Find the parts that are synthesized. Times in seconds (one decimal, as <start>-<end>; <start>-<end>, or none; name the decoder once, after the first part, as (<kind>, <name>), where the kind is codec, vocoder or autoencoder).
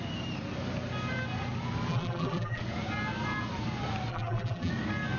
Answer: 1.9-2.6 (vocoder, BigVGAN v2); 4.1-4.7